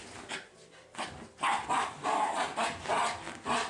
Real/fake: real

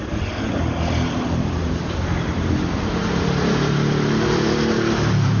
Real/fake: real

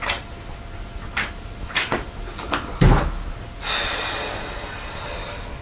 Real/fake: real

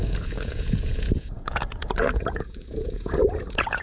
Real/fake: fake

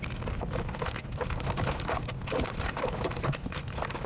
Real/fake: real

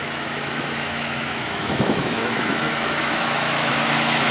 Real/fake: fake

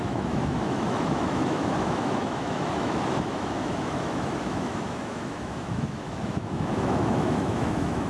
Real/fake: fake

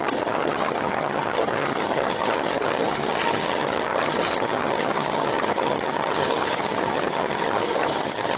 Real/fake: fake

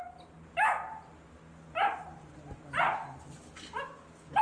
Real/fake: real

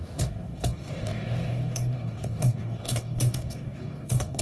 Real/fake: fake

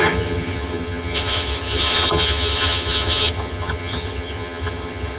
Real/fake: fake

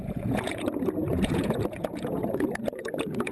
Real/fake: fake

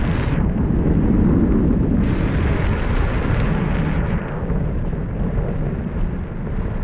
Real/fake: real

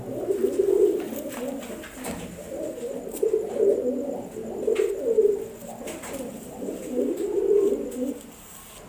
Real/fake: real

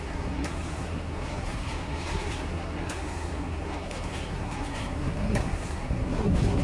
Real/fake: fake